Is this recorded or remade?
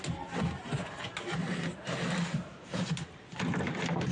recorded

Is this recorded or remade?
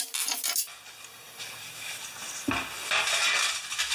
recorded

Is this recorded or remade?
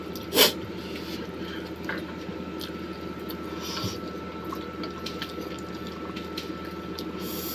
recorded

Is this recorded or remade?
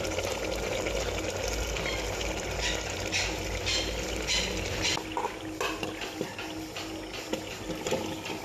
recorded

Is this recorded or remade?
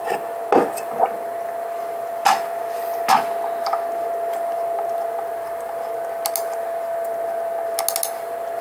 recorded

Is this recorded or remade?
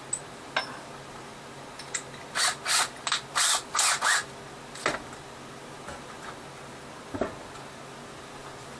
recorded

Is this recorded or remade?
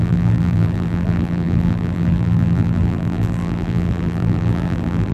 remade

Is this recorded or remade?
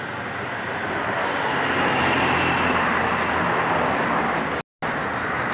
recorded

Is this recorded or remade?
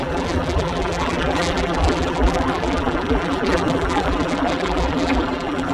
remade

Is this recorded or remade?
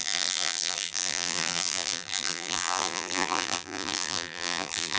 remade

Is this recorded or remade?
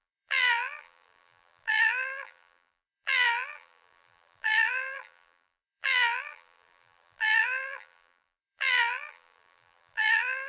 remade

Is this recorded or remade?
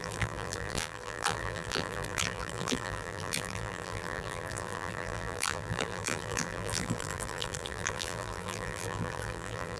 remade